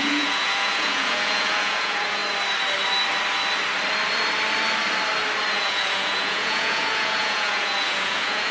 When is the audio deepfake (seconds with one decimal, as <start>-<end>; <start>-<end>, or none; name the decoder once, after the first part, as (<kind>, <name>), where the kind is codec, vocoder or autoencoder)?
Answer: 0.0-2.2 (vocoder, Vocos); 5.5-8.5